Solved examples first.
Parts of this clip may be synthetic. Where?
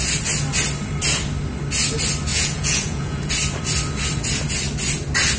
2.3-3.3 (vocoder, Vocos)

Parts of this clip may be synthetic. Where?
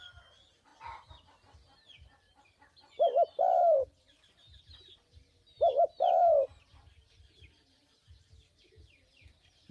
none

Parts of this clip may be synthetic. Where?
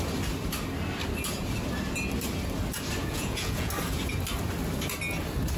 3.0-3.7 (vocoder, Vocos)